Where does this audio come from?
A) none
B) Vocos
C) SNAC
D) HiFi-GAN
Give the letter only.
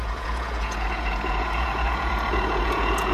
B